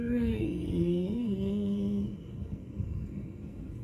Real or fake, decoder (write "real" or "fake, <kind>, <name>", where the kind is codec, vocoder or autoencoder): fake, codec, SNAC